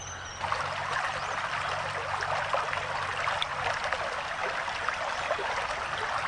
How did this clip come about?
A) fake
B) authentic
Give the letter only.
B